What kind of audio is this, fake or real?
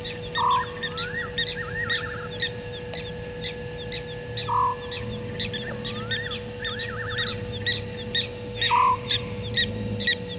real